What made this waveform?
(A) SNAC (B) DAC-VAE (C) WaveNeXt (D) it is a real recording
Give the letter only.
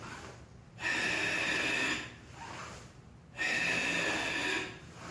D